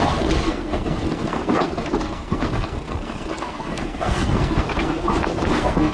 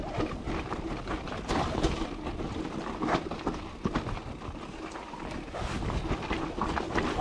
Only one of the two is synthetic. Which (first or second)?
first